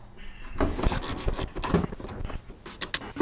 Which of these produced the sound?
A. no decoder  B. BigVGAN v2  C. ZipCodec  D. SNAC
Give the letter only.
A